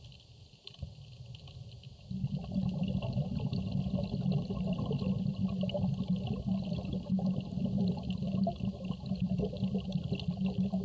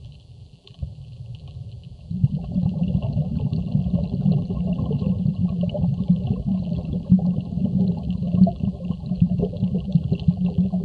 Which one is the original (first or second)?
first